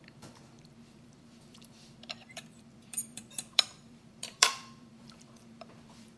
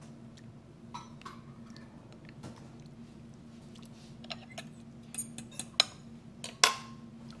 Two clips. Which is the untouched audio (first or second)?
second